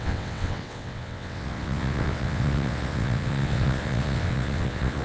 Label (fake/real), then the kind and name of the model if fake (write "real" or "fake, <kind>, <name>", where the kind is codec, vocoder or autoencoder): fake, vocoder, WaveNeXt